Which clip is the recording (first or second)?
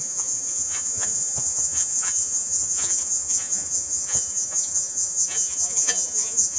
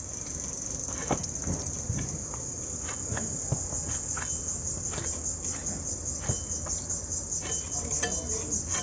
second